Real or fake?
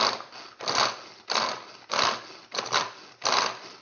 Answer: real